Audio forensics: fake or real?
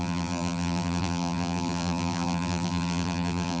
fake